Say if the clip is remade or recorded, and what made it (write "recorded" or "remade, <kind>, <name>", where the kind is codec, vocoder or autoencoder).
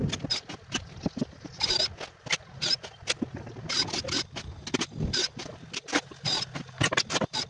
recorded